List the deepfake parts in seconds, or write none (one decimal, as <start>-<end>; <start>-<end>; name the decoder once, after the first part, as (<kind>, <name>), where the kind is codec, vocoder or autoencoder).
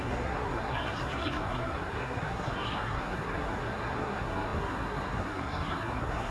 0.0-6.3 (codec, SNAC)